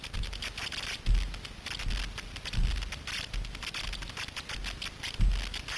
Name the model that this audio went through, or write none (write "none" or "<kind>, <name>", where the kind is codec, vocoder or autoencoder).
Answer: none